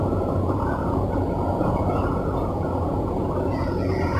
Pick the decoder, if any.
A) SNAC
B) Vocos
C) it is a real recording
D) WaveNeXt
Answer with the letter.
B